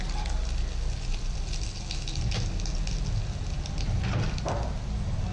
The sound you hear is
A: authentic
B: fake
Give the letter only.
A